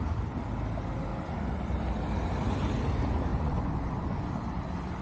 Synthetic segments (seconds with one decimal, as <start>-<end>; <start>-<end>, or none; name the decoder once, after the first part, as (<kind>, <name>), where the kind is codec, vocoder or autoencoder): 3.3-4.3 (vocoder, Vocos)